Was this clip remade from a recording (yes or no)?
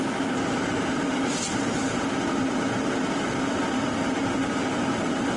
no